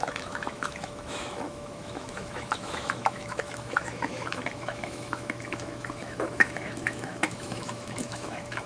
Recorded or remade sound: remade